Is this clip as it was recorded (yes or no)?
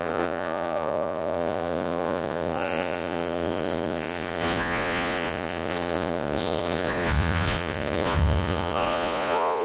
no